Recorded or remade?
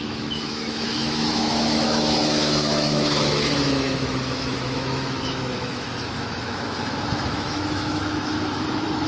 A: remade